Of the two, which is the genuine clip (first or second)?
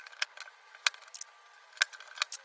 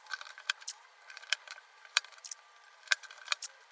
first